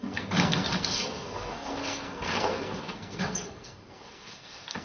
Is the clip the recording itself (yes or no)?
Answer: no